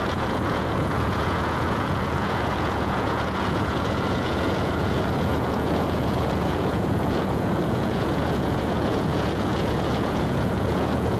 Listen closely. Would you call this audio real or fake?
fake